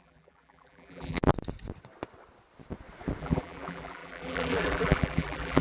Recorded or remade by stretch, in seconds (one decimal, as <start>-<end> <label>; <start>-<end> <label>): 0.0-1.3 remade; 1.3-3.2 recorded; 3.2-5.6 remade